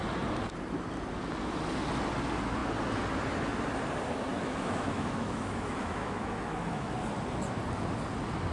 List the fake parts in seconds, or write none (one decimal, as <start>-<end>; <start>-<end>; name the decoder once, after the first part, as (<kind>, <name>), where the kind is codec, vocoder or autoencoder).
4.3-7.0 (autoencoder, DAC-VAE)